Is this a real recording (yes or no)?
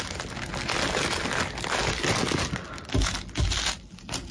yes